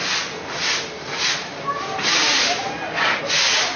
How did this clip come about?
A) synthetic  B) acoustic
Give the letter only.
B